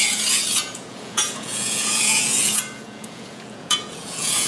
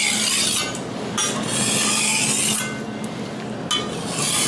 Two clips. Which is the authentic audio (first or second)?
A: second